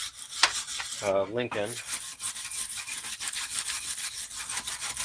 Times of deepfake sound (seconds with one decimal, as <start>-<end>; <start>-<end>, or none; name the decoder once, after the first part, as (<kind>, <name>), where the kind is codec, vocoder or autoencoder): 0.0-0.7 (vocoder, BigVGAN v2); 2.1-3.8